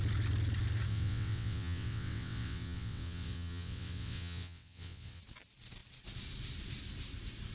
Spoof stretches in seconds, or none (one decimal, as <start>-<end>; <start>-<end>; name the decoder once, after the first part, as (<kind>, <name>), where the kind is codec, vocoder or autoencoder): 0.9-5.2 (vocoder, WaveNeXt)